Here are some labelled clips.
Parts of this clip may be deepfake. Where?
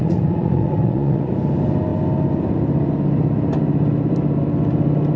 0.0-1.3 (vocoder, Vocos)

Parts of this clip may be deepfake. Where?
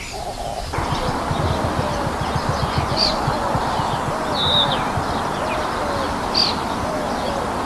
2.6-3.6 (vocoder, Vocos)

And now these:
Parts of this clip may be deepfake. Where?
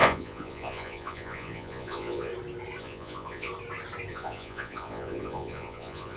0.0-2.3 (vocoder, Vocos); 2.8-3.5; 4.1-6.2